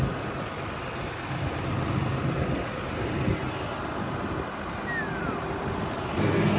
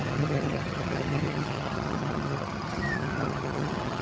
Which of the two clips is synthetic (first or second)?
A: second